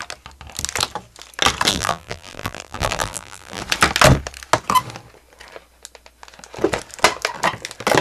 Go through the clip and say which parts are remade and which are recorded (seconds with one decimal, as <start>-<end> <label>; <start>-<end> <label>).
0.0-1.7 recorded; 1.7-3.6 remade; 3.6-8.0 recorded